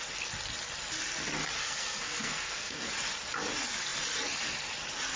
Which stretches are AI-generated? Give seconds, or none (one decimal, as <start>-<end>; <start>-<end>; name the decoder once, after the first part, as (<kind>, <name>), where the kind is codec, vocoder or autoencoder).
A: 1.6-2.9 (codec, SNAC)